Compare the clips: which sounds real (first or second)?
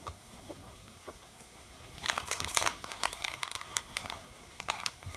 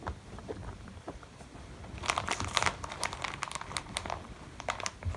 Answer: second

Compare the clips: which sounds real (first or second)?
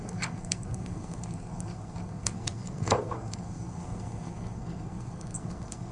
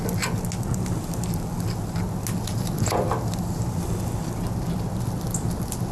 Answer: second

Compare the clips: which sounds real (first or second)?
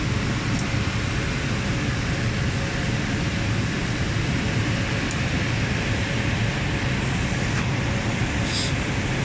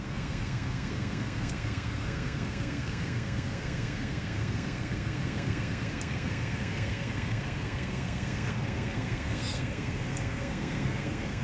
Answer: first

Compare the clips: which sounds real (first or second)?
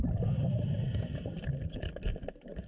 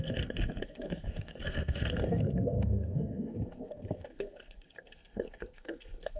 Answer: first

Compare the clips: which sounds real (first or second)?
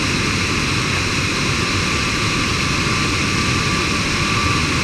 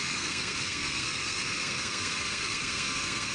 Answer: first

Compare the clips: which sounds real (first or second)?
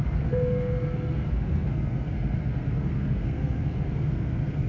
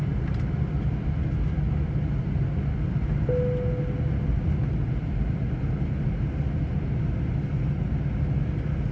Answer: second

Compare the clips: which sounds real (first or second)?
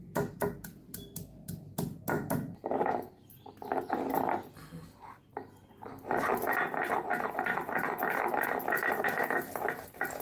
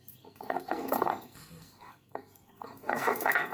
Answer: first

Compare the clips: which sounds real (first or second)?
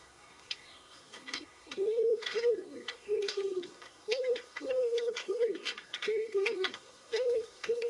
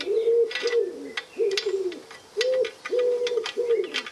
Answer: second